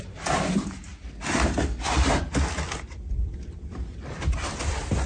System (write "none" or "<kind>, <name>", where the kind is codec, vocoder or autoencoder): none